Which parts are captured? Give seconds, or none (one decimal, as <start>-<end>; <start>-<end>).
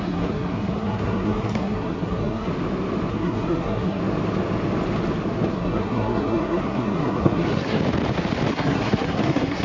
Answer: 2.5-3.1; 4.0-5.5; 7.8-8.5